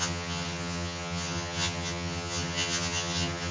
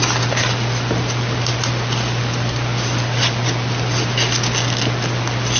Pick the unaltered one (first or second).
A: second